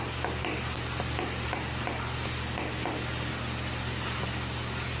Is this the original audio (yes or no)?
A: yes